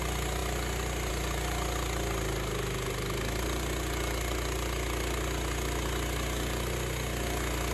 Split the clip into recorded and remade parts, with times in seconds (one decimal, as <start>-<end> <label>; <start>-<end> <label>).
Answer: 0.0-7.7 recorded